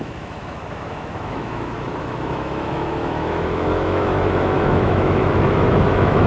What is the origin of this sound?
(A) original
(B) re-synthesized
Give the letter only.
B